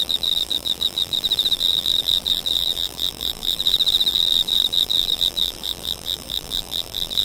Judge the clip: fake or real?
fake